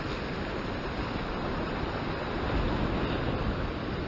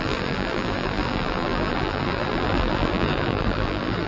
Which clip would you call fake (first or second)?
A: second